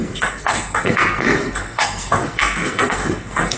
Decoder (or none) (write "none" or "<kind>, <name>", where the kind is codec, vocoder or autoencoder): codec, SNAC